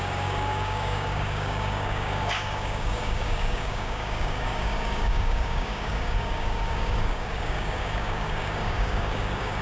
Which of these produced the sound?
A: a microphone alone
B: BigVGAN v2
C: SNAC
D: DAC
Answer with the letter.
D